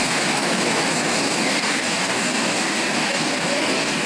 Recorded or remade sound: remade